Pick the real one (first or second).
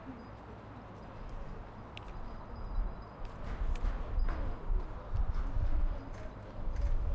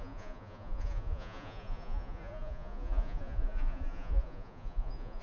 first